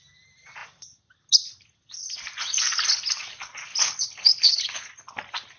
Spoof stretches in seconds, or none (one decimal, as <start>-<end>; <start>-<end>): 3.7-4.9